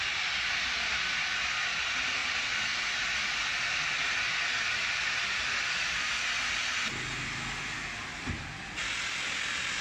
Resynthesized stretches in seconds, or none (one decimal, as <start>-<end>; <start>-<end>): none